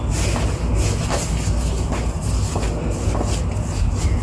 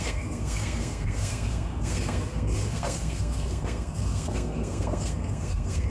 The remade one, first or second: second